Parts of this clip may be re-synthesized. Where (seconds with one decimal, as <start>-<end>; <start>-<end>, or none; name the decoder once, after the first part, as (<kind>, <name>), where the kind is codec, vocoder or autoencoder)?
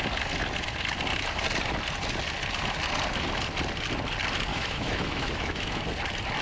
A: 4.5-5.8 (autoencoder, DAC-VAE)